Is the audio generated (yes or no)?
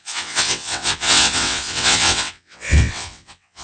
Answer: yes